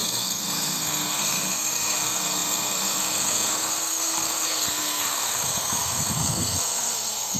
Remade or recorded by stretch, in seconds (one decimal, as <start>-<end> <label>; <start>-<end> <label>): 0.0-7.4 remade